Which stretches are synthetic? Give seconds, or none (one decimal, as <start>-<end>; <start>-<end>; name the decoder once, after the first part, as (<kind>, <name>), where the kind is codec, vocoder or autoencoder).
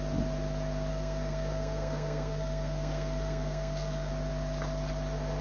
0.9-4.1 (codec, SNAC)